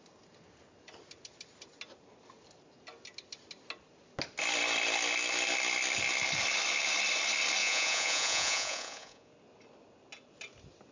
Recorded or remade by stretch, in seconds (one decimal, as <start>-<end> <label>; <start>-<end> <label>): 0.0-7.6 recorded; 7.6-9.3 remade; 9.3-10.9 recorded